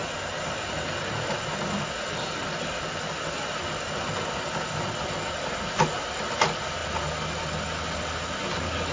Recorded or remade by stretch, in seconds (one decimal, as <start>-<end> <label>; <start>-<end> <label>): 0.0-8.9 recorded